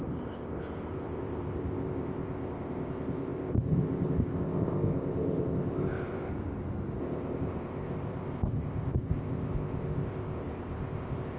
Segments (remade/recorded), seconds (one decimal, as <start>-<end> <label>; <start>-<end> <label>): 0.0-6.3 remade; 6.3-7.0 recorded; 7.0-11.4 remade